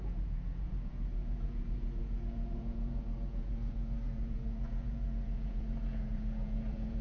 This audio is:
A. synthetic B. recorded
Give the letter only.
A